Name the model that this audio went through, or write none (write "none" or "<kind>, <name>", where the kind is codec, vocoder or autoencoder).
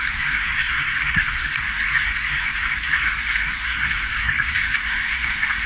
codec, SNAC